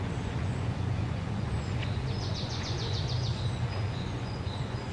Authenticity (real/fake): fake